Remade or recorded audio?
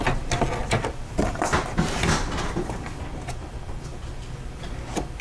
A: recorded